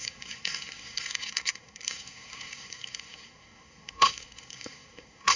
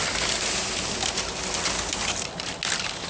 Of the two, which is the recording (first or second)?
second